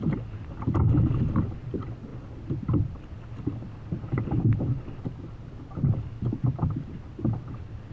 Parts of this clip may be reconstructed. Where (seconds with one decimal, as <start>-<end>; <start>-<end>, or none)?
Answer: none